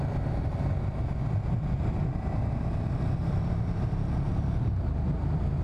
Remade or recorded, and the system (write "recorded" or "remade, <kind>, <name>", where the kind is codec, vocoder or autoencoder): recorded